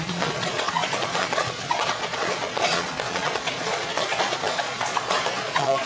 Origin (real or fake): fake